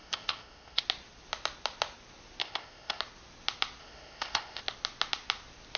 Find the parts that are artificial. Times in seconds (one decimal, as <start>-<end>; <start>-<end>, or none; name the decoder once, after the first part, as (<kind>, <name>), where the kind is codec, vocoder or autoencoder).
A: 0.0-0.8 (codec, ZipCodec); 2.4-3.0; 3.8-4.6